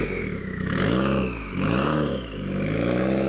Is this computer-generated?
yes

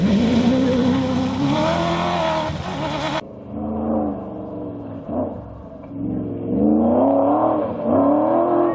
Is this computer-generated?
no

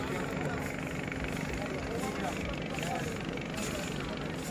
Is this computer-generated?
no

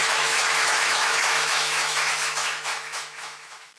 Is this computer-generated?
yes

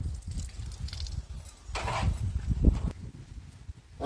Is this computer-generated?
no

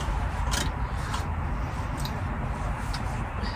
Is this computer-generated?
no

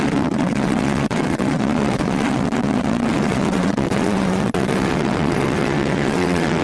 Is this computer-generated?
yes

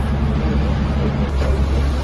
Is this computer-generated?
no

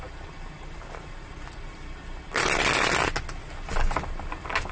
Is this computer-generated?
no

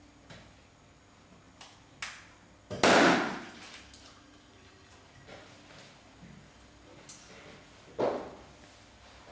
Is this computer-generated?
no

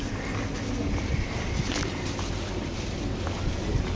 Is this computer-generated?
no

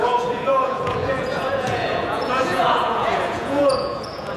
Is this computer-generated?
yes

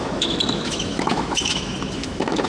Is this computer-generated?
yes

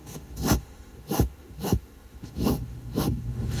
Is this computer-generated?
yes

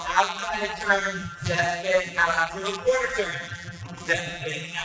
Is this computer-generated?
yes